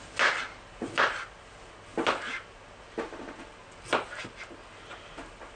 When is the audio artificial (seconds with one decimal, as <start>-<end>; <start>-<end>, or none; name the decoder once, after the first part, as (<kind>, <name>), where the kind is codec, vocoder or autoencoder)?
none